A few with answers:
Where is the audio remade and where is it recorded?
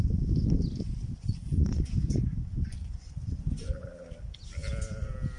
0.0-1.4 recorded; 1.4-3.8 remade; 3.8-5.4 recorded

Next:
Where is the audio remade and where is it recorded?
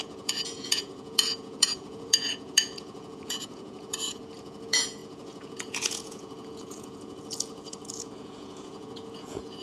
0.0-9.6 remade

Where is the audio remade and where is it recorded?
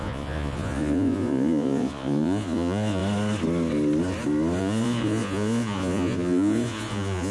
0.0-3.0 remade; 3.0-4.6 recorded; 4.6-7.3 remade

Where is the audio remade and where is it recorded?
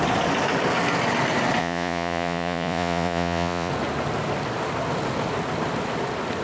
0.0-1.6 recorded; 1.6-3.7 remade; 3.7-6.4 recorded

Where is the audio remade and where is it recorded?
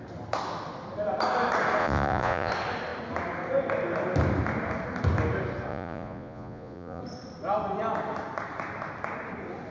0.0-1.8 recorded; 1.8-2.5 remade; 2.5-5.7 recorded; 5.7-7.0 remade; 7.0-9.7 recorded